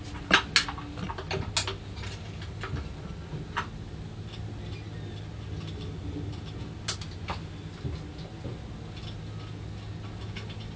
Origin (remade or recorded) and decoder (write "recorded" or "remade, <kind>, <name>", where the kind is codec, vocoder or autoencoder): recorded